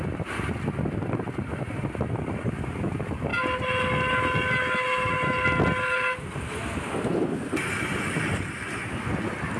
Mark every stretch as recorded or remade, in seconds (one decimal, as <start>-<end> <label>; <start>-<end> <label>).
0.0-9.6 recorded